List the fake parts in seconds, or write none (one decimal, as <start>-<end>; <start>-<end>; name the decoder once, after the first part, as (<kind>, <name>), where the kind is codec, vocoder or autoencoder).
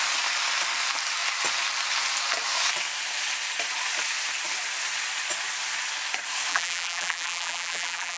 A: 6.5-8.2 (vocoder, BigVGAN v2)